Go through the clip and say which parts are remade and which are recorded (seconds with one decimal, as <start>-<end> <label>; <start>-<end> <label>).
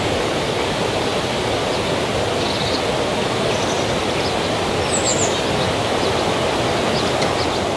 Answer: 0.0-7.8 recorded